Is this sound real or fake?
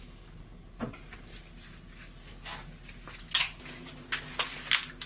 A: real